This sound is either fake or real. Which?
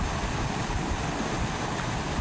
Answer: fake